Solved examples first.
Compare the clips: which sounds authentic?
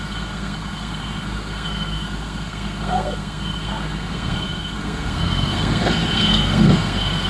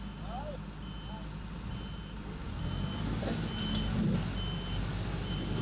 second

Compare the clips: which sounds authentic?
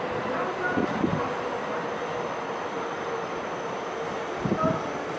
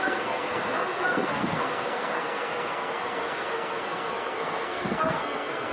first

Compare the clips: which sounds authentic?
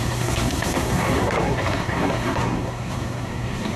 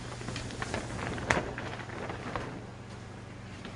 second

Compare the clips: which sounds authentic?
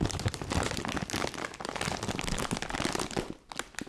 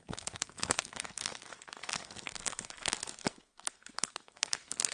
first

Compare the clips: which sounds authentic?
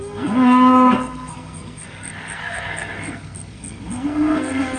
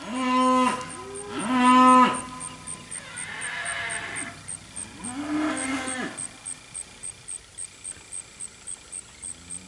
second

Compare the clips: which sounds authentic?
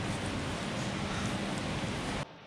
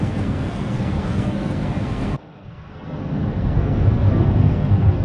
first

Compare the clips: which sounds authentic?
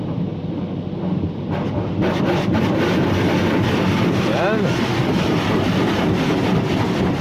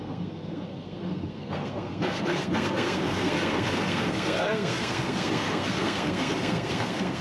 first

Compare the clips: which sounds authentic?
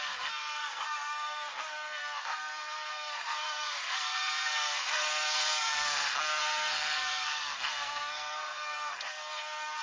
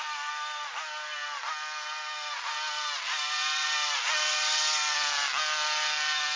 second